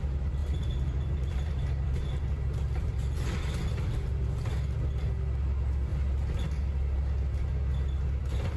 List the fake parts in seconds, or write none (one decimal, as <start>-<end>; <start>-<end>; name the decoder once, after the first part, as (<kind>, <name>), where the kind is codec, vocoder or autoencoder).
0.4-4.3 (vocoder, BigVGAN v2)